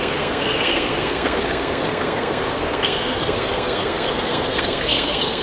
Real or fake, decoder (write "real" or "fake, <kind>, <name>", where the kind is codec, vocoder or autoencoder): fake, codec, SNAC